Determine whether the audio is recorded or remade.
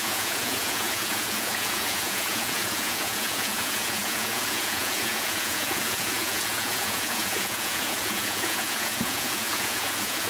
remade